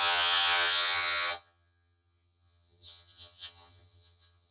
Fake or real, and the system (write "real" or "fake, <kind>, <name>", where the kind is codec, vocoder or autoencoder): fake, vocoder, HiFi-GAN